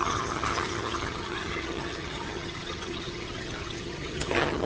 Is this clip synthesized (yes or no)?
yes